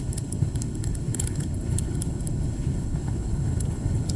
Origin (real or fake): fake